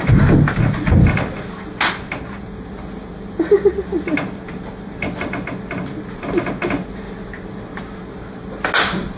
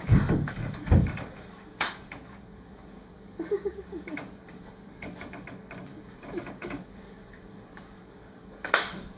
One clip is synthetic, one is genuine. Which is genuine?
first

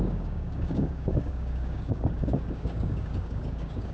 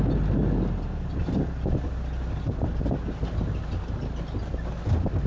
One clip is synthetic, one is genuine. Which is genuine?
second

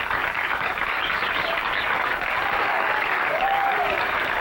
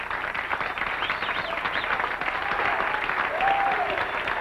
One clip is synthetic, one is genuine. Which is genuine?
second